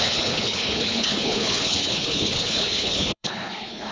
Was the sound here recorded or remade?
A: remade